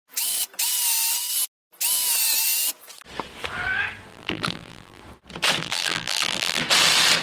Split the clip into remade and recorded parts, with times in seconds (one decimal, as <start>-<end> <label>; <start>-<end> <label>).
0.0-4.1 recorded; 4.1-5.0 remade; 5.0-5.6 recorded; 5.6-6.6 remade; 6.6-7.2 recorded